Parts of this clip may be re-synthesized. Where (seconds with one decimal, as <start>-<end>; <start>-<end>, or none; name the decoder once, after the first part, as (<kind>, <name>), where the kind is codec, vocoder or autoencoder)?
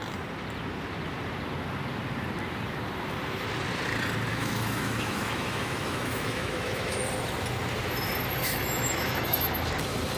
4.3-7.0 (autoencoder, DAC-VAE); 8.4-9.4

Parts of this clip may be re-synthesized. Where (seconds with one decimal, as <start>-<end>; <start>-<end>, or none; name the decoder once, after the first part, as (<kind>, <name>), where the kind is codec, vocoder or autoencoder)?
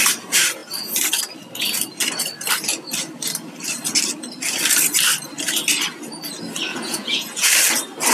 6.7-7.5 (vocoder, Vocos)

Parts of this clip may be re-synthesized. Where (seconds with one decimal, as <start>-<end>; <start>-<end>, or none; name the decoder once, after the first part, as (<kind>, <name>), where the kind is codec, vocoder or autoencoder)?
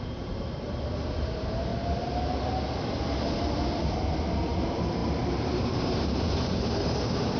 0.0-1.7 (vocoder, BigVGAN v2); 4.6-7.4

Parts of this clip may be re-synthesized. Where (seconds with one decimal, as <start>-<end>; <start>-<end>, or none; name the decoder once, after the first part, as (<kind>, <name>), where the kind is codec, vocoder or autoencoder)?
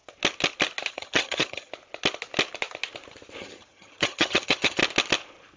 0.9-1.7 (vocoder, HiFi-GAN); 3.4-4.8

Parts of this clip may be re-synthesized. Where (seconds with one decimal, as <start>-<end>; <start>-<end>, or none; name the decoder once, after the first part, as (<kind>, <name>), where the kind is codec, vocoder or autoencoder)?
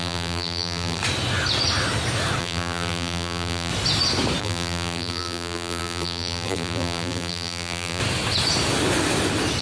0.0-1.0 (vocoder, BigVGAN v2); 2.4-3.7; 4.4-8.0